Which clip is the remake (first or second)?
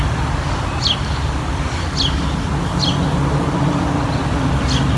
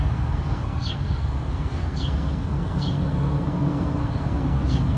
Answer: second